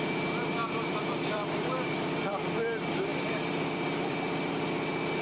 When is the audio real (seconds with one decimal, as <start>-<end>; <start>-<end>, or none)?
0.0-0.6; 2.3-3.1; 4.5-5.2

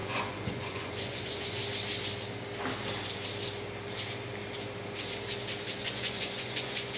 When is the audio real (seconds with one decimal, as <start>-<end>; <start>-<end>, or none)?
1.6-5.8

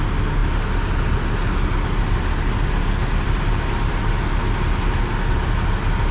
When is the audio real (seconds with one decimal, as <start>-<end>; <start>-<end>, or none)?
0.0-3.0; 4.0-6.1

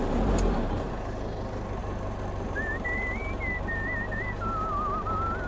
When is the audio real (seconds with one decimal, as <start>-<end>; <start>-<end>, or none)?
0.9-1.8; 5.1-5.5

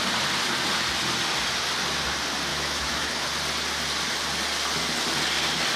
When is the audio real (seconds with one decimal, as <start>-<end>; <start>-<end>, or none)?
0.0-2.5; 3.1-5.8

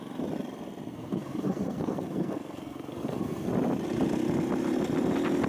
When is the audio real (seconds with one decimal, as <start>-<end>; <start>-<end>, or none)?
0.0-0.9; 3.5-5.5

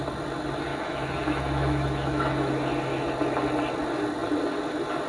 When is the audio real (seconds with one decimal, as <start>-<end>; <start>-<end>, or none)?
0.0-0.7; 2.5-5.1